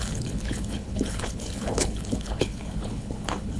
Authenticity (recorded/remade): remade